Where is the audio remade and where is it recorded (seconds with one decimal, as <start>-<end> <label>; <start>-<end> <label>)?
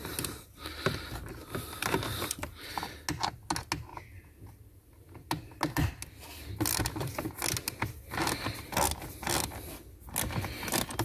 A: 0.0-11.0 recorded